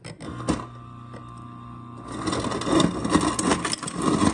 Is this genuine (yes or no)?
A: yes